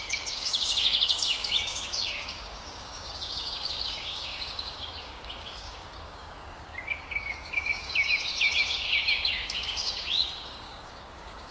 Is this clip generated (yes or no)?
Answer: yes